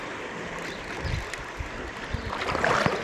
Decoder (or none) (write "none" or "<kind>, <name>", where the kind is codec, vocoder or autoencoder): none